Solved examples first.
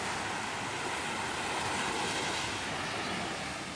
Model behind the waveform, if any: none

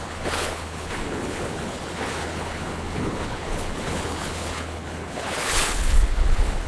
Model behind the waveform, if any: codec, HILCodec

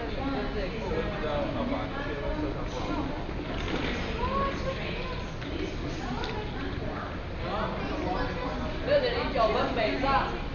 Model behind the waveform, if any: none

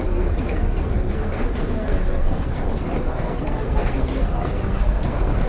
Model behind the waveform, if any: codec, SNAC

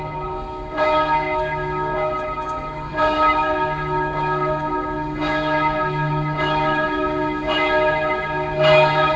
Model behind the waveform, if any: autoencoder, DAC-VAE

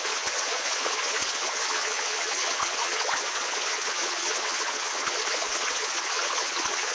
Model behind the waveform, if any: vocoder, Vocos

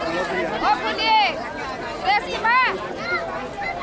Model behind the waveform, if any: none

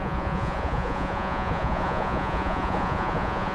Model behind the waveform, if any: vocoder, Vocos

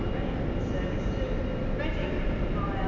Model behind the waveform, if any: none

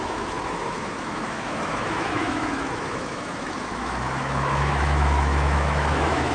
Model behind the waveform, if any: autoencoder, DAC-VAE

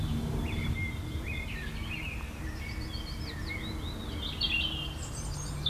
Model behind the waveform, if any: none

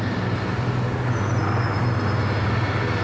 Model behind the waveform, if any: none